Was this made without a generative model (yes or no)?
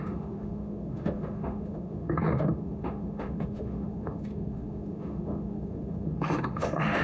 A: no